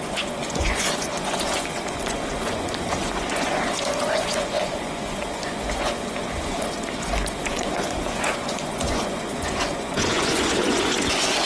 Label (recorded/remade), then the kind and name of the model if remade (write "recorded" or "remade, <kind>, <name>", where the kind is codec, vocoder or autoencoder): remade, vocoder, Vocos